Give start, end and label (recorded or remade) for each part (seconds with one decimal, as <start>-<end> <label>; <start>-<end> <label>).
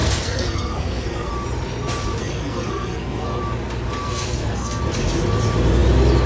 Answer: 0.0-1.3 remade; 1.3-2.2 recorded; 2.2-3.4 remade; 3.4-4.0 recorded; 4.0-4.8 remade; 4.8-6.3 recorded